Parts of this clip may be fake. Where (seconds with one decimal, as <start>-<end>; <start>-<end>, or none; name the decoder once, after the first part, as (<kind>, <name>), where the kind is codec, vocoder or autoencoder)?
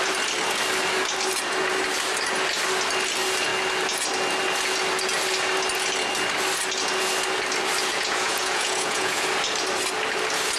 7.9-9.2 (vocoder, Vocos)